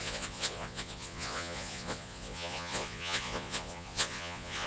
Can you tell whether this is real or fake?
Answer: fake